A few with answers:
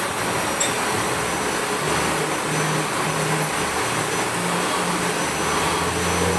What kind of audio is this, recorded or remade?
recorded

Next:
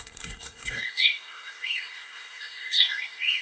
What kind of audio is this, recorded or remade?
remade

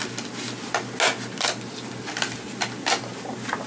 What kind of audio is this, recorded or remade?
recorded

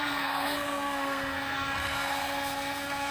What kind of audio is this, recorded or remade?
remade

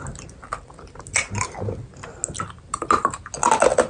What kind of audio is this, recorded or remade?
recorded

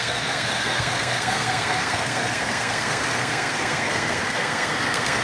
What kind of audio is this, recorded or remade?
remade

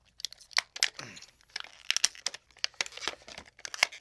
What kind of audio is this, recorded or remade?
recorded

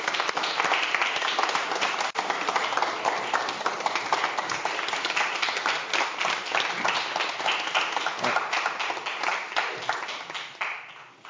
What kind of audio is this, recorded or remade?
recorded